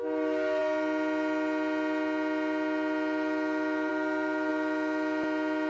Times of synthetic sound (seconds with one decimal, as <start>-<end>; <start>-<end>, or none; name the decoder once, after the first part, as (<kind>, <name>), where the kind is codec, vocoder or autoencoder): none